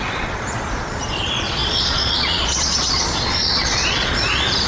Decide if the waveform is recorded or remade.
remade